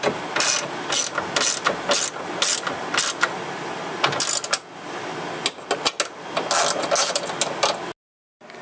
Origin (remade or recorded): recorded